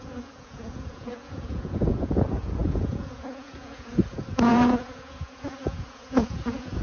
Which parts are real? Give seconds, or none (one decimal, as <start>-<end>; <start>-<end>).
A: none